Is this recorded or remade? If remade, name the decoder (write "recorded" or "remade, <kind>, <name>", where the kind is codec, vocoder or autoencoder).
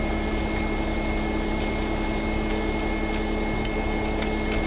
recorded